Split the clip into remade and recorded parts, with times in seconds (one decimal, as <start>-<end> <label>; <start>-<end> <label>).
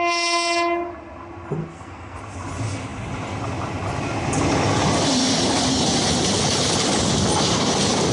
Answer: 0.0-1.6 recorded; 1.6-2.2 remade; 2.2-8.1 recorded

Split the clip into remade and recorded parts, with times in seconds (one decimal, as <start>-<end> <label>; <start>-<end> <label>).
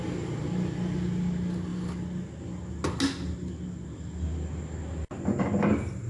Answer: 0.0-6.1 recorded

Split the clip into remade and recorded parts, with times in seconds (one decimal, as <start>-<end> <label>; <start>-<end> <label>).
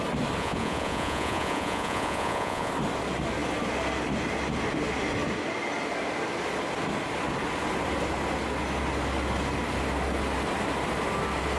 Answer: 0.0-0.4 recorded; 0.4-2.7 remade; 2.7-11.6 recorded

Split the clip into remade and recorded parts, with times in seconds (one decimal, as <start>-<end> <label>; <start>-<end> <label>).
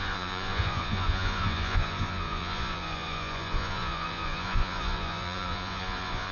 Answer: 0.0-6.3 remade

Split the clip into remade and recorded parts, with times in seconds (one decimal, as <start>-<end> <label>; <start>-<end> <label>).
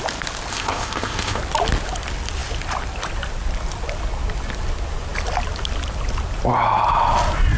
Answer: 0.0-0.5 recorded; 0.5-1.4 remade; 1.4-7.6 recorded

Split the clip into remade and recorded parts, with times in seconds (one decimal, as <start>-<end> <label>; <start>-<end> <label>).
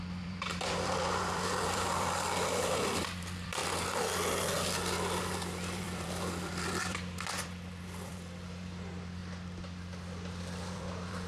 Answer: 0.0-3.6 remade; 3.6-5.2 recorded; 5.2-9.2 remade; 9.2-10.4 recorded; 10.4-11.3 remade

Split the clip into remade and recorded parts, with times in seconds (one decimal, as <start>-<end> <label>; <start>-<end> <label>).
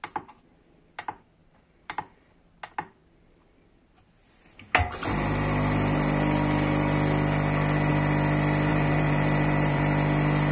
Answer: 0.0-1.4 recorded; 1.4-2.5 remade; 2.5-8.7 recorded; 8.7-9.8 remade; 9.8-10.5 recorded